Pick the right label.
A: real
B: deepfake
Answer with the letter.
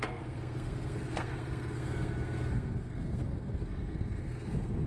B